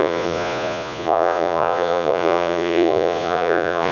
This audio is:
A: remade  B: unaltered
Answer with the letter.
A